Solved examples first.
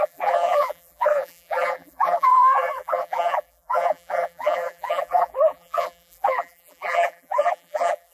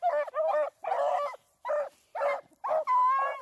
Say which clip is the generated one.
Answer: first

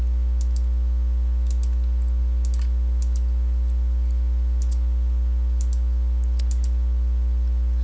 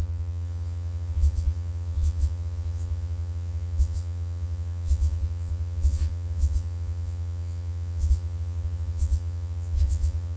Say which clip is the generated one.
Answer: second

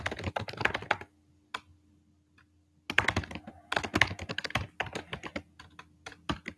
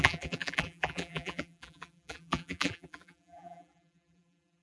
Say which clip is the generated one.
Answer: second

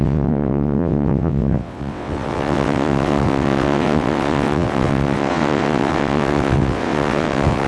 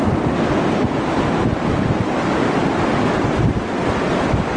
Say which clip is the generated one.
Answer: first